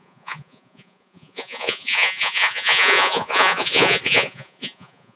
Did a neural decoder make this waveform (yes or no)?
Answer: yes